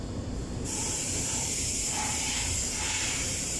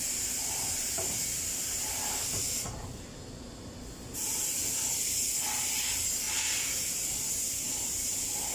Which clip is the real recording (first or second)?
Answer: second